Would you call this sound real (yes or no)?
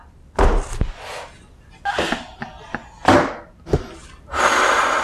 yes